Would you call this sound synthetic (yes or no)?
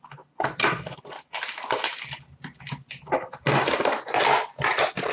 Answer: no